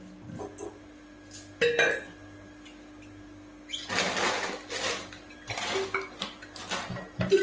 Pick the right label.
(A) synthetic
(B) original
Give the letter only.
B